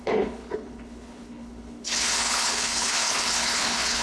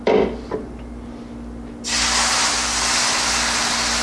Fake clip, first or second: first